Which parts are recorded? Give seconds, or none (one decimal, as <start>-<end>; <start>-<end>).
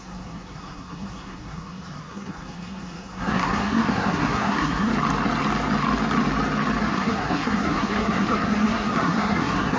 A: 4.9-6.8